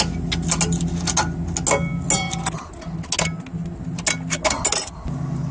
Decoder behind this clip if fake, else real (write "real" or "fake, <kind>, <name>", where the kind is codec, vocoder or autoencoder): real